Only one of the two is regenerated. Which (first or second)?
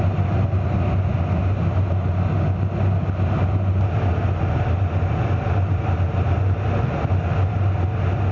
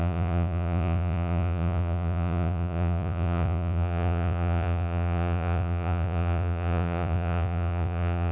second